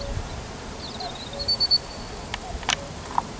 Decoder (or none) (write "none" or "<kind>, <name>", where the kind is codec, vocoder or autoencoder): none